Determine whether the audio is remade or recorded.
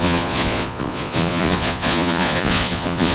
remade